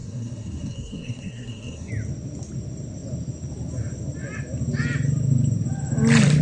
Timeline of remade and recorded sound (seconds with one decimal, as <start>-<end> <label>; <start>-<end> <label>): 0.0-1.9 remade; 1.9-6.4 recorded